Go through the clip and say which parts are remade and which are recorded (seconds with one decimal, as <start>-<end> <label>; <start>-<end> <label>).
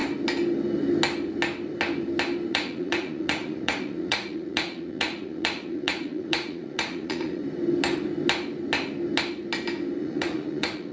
0.0-2.5 recorded; 2.5-7.4 remade; 7.4-10.0 recorded; 10.0-10.9 remade